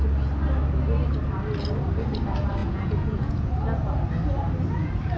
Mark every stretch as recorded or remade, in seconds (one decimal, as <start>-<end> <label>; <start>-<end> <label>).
0.0-2.6 recorded; 2.6-3.5 remade; 3.5-5.2 recorded